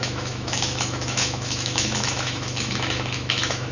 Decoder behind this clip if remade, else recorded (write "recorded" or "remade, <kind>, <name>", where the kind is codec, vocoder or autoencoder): remade, autoencoder, DAC-VAE